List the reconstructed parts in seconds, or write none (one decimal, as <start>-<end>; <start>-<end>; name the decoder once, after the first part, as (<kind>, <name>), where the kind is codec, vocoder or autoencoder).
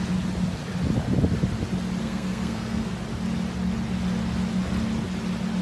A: 2.0-2.9 (codec, SNAC)